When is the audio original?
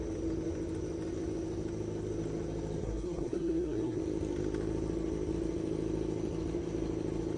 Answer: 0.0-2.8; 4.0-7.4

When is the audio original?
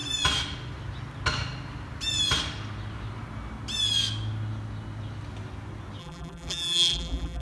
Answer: 0.0-6.0